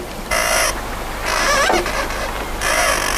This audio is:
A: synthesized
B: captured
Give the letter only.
B